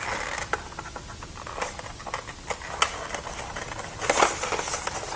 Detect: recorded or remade recorded